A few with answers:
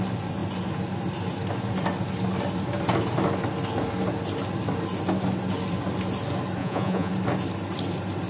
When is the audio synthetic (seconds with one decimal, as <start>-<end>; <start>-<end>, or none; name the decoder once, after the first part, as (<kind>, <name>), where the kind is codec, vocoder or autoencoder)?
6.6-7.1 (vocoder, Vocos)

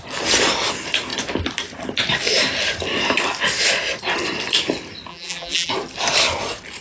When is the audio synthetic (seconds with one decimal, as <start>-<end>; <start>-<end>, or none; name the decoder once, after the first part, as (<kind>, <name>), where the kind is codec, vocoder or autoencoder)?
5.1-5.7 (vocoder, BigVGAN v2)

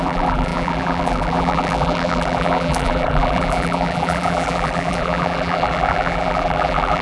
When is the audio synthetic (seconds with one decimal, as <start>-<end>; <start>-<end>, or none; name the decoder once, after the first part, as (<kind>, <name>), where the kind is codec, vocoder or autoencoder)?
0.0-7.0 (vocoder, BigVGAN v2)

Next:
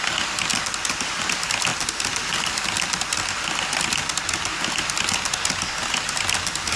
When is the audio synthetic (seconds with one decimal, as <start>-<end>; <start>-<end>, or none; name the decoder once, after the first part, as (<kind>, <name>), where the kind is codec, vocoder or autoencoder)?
0.5-1.2 (vocoder, BigVGAN v2)